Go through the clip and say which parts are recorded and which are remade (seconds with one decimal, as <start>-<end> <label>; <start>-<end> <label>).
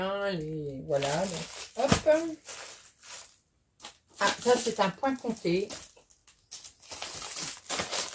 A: 0.0-8.1 recorded